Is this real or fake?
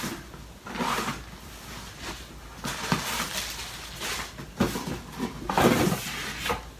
real